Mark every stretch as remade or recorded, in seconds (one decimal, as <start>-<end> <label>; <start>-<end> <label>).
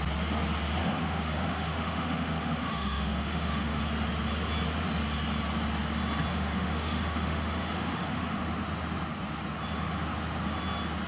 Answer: 0.0-0.8 recorded; 0.8-3.8 remade; 3.8-6.3 recorded; 6.3-8.5 remade; 8.5-11.1 recorded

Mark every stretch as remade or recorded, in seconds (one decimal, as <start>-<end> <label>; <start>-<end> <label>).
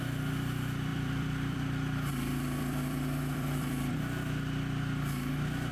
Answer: 0.0-0.9 recorded; 0.9-4.0 remade; 4.0-5.7 recorded